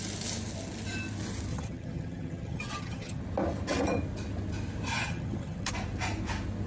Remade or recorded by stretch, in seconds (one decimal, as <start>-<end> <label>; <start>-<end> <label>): 0.0-1.5 recorded; 1.5-3.2 remade; 3.2-4.9 recorded; 4.9-5.7 remade; 5.7-6.7 recorded